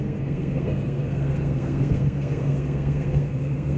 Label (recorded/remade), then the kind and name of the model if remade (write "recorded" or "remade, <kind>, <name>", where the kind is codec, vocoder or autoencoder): remade, codec, SNAC